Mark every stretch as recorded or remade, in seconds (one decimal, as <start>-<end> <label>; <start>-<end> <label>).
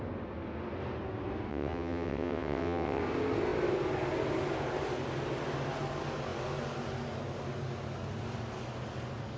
0.0-1.5 recorded; 1.5-3.0 remade; 3.0-9.4 recorded